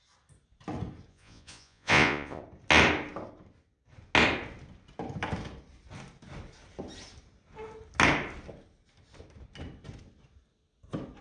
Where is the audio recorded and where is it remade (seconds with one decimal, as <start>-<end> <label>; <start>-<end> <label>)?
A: 0.0-1.1 recorded; 1.1-2.4 remade; 2.4-11.2 recorded